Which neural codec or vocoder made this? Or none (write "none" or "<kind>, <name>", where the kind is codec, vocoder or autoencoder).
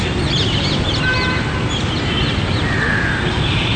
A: none